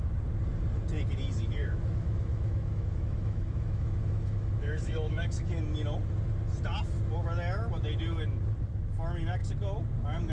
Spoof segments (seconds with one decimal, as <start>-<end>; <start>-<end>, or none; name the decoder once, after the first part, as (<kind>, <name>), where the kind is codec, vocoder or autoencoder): 1.6-5.6 (autoencoder, DAC-VAE)